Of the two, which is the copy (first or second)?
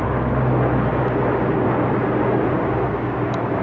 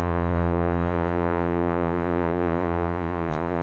second